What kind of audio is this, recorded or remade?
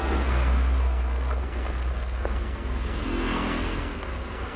remade